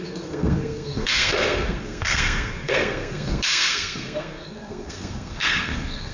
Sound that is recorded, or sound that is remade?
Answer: remade